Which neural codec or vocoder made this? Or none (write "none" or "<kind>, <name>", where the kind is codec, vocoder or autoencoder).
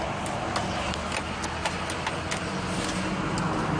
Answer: none